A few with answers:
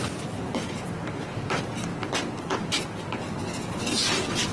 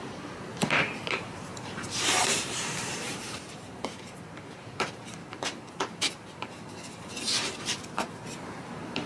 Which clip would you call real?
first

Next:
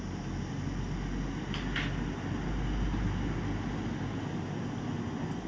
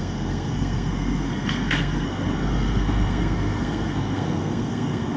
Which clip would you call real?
first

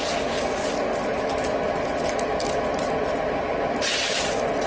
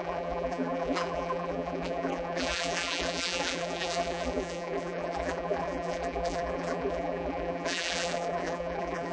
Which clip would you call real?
first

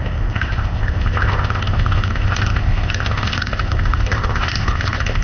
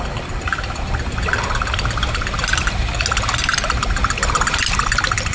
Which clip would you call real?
second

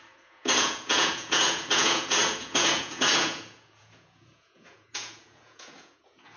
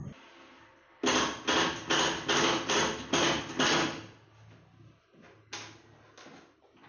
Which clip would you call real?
second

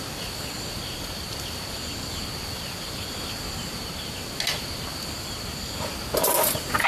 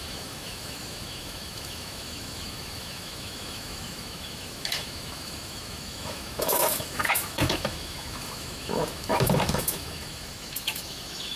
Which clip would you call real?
first